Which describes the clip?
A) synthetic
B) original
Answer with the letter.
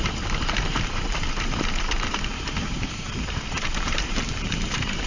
A